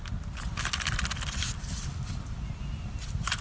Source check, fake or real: real